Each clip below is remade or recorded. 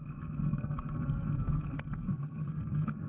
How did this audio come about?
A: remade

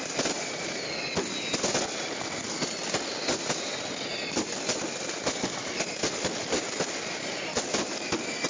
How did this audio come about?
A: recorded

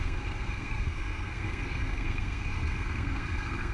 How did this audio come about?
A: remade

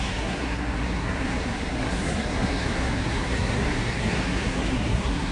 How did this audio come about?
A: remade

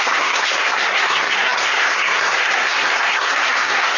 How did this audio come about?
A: remade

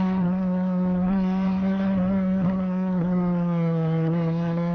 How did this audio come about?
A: remade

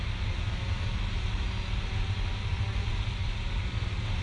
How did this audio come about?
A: recorded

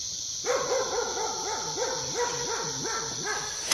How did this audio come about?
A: recorded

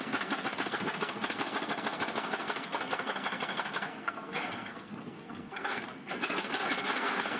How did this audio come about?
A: remade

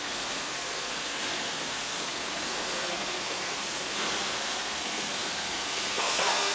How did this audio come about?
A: remade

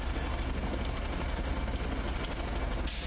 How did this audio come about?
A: recorded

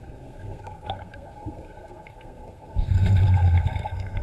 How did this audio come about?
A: remade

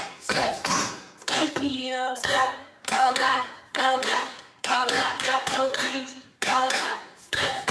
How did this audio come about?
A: remade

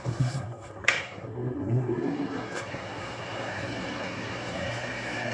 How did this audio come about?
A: remade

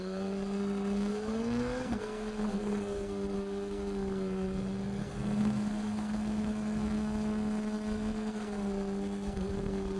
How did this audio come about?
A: remade